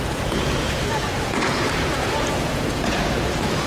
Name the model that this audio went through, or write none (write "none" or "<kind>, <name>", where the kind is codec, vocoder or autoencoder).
vocoder, Vocos